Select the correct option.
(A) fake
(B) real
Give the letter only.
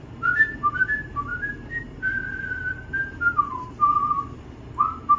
B